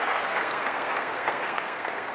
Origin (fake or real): fake